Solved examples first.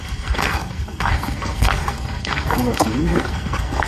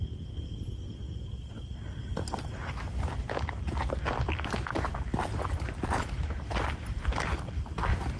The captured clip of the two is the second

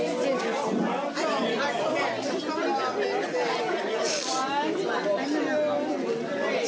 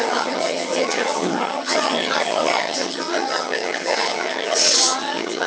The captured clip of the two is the first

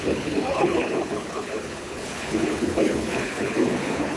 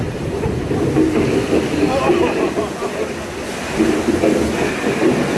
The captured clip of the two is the second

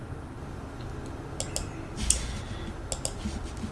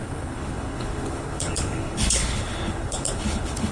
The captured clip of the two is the first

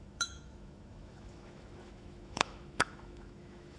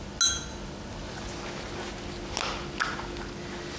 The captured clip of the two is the second